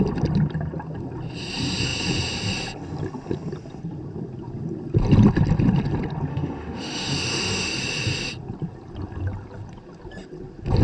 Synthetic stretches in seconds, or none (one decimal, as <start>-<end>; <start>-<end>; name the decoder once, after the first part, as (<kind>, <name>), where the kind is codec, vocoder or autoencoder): 6.3-7.8 (autoencoder, DAC-VAE)